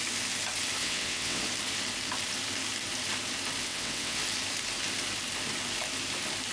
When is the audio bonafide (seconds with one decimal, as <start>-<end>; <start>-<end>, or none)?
0.0-0.8; 1.4-3.6; 4.2-6.5